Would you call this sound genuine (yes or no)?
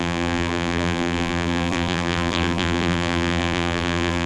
no